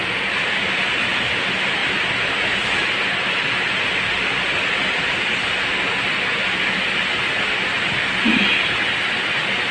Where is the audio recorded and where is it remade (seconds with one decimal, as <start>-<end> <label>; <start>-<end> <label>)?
0.0-1.8 recorded; 1.8-2.3 remade; 2.3-9.7 recorded